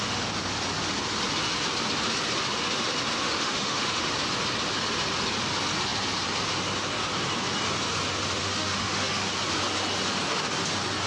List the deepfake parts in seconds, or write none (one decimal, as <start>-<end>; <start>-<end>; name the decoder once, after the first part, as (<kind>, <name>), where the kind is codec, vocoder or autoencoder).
3.2-4.1 (autoencoder, DAC-VAE); 8.4-9.3